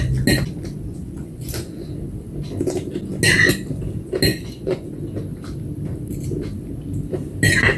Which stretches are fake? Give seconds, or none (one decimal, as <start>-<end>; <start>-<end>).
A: 0.9-1.9; 4.3-5.0